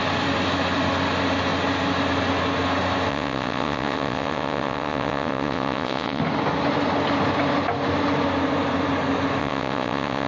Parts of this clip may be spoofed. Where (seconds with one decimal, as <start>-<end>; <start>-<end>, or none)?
3.1-6.2; 9.4-10.3